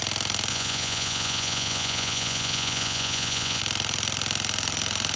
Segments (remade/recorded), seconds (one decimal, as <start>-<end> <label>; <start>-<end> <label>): 0.0-0.5 recorded; 0.5-3.6 remade; 3.6-5.2 recorded